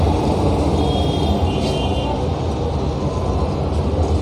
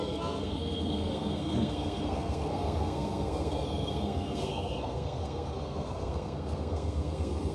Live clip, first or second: first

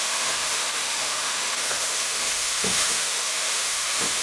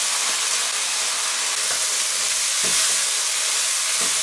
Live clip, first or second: second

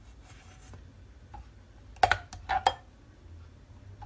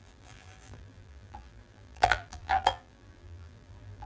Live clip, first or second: first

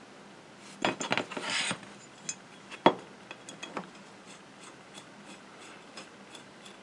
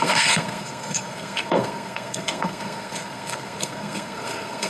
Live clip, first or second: first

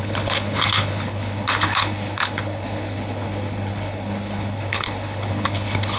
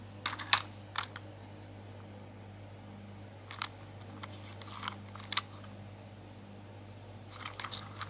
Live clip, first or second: second